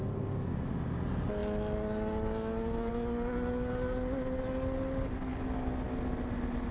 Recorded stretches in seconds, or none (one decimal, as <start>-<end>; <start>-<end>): 0.0-6.7